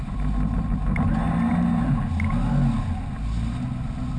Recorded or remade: recorded